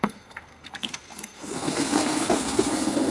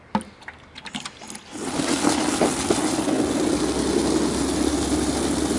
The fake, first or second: first